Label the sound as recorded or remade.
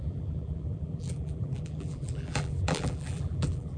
remade